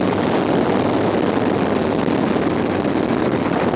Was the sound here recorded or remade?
recorded